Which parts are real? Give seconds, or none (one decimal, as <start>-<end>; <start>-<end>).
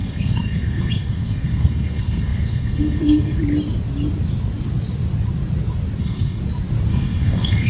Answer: 3.4-6.0; 6.4-6.9